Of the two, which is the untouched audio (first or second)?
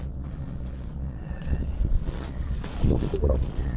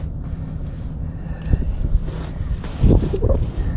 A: second